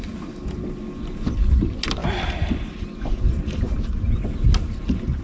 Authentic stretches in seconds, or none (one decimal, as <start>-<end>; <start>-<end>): 0.0-5.2

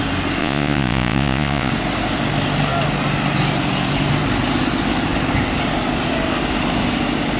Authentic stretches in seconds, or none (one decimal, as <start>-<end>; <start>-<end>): 0.0-0.4; 1.7-7.4

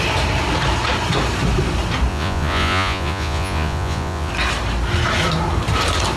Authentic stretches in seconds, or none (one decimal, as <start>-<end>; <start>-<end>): 0.0-2.1; 4.3-6.2